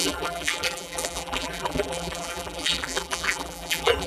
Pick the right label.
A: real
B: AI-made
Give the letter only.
B